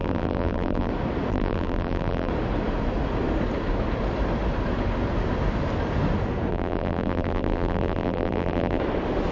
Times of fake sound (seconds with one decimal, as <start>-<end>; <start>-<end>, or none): 0.0-0.9; 1.3-2.3; 6.5-8.8